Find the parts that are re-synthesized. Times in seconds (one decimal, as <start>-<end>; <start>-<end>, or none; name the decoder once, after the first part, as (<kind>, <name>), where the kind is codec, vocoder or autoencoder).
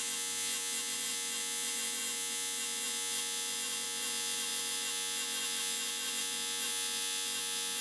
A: 0.0-7.8 (vocoder, Vocos)